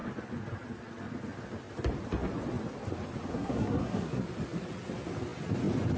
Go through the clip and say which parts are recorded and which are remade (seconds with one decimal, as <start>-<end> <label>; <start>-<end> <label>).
0.0-3.3 recorded; 3.3-4.2 remade; 4.2-6.0 recorded